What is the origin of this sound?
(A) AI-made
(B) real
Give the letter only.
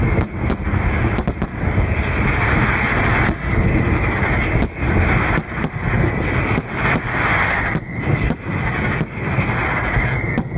B